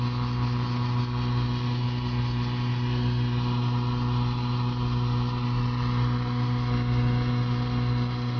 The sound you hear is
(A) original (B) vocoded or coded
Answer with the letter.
A